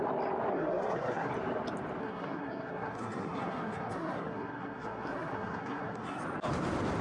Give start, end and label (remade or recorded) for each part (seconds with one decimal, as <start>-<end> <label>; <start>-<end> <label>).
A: 0.0-0.5 recorded; 0.5-1.3 remade; 1.3-2.0 recorded; 2.0-6.2 remade; 6.2-7.0 recorded